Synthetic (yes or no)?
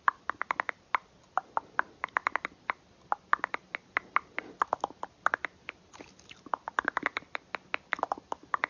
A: no